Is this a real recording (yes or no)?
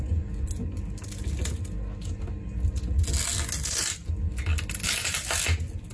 yes